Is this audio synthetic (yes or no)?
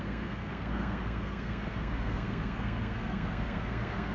yes